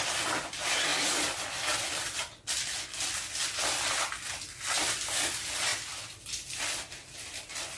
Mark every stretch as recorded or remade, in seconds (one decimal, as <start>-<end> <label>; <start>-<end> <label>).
0.0-7.8 recorded